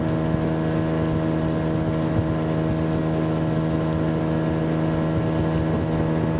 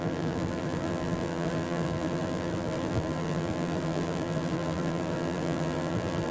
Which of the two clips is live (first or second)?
first